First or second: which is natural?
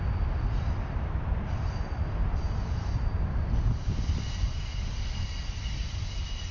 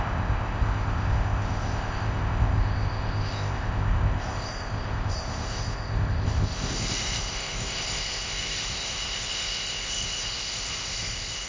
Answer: first